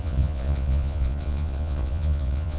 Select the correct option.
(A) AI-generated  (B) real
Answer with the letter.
A